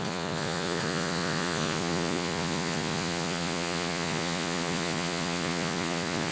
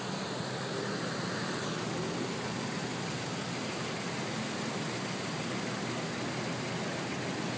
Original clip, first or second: second